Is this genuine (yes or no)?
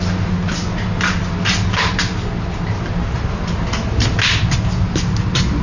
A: yes